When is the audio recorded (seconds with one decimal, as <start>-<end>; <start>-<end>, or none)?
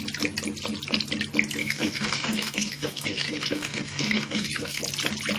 0.0-1.6; 4.8-5.4